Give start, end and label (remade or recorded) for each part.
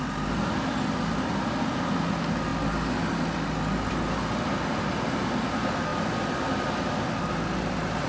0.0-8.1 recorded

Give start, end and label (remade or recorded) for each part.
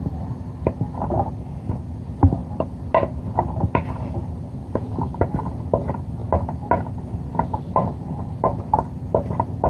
0.0-4.6 recorded; 4.6-5.6 remade; 5.6-7.7 recorded; 7.7-8.3 remade; 8.3-9.7 recorded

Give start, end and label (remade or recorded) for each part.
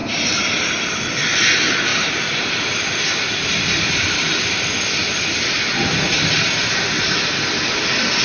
0.0-1.1 remade; 1.1-1.9 recorded; 1.9-4.7 remade; 4.7-8.2 recorded